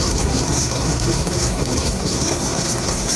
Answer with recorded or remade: remade